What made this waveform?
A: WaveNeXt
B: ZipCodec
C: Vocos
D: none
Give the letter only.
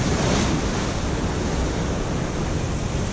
D